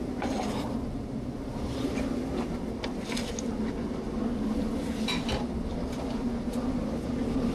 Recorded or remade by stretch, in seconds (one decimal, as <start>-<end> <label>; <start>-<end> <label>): 0.0-2.6 remade; 2.6-7.5 recorded